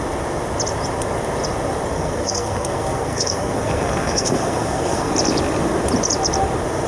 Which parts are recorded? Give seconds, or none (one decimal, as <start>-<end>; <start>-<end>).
0.0-1.9; 5.1-6.9